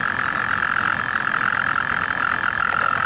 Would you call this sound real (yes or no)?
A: yes